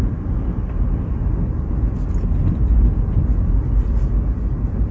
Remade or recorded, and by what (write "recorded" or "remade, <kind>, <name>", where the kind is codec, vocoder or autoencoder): recorded